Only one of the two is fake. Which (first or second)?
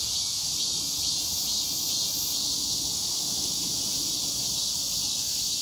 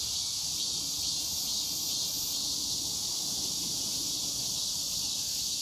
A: second